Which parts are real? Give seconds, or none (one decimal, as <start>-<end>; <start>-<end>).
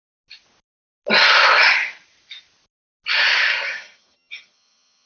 0.0-3.5